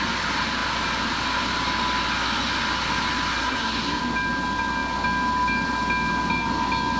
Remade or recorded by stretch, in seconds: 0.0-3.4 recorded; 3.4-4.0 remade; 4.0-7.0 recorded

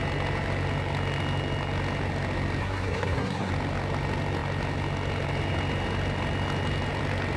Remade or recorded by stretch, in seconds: 0.0-2.6 recorded; 2.6-3.5 remade; 3.5-7.4 recorded

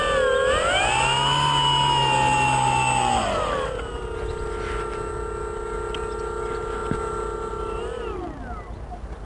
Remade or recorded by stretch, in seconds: 0.0-9.3 recorded